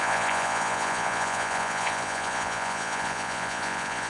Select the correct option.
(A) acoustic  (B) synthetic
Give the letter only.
B